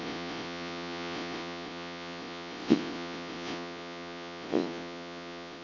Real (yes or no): no